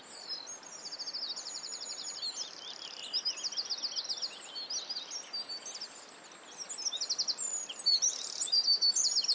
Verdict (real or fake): real